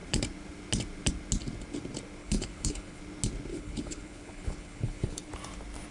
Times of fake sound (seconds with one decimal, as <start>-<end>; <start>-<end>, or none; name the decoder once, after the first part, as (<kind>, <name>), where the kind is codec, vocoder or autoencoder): 2.2-3.0 (codec, HILCodec); 3.5-5.3